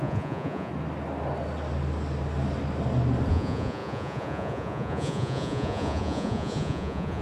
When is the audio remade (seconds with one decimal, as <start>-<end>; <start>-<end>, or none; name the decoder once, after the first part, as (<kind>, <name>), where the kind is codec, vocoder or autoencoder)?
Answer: 0.0-0.7 (vocoder, Vocos); 3.3-7.2